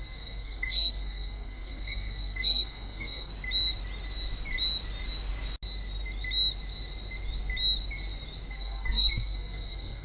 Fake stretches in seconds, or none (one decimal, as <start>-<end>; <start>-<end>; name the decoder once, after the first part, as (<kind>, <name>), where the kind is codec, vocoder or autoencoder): 0.0-3.3 (codec, SNAC); 8.5-10.0